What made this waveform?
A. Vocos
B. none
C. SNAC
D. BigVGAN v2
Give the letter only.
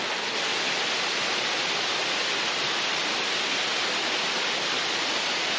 B